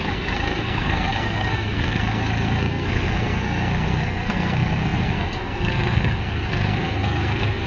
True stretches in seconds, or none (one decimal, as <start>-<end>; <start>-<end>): none

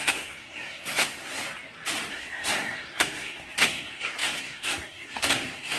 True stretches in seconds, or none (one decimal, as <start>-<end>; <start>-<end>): 1.4-2.1

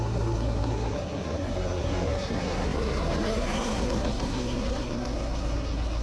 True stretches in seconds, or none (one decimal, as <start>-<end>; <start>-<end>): none

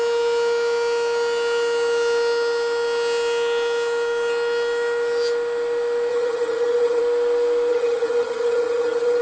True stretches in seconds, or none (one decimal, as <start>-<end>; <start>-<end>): 0.0-6.1; 7.0-7.7

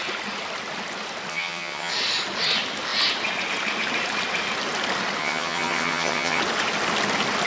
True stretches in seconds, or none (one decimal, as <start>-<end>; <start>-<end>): 0.0-1.3; 1.9-5.2; 6.4-7.5